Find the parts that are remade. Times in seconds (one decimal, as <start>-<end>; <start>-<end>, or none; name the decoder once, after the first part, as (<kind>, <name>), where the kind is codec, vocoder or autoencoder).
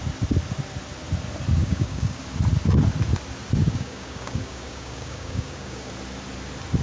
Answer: 1.6-2.2 (codec, DAC); 3.6-5.9